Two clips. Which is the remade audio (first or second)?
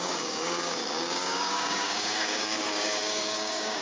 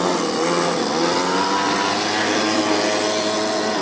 first